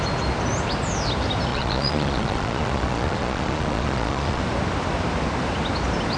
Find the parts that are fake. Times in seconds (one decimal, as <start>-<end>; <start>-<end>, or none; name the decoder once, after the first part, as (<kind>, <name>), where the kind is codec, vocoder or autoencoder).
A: 1.5-4.4 (vocoder, Vocos)